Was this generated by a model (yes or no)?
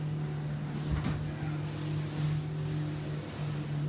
no